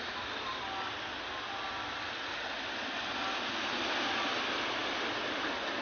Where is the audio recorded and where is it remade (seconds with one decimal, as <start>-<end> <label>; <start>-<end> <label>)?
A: 0.0-5.8 recorded